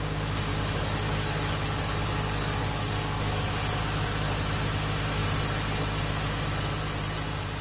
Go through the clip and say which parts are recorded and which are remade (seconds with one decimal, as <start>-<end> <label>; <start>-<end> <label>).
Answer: 0.0-0.5 recorded; 0.5-3.8 remade; 3.8-7.6 recorded